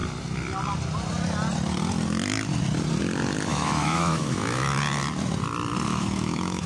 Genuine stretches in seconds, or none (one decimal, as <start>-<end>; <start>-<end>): 0.0-3.5; 4.8-5.9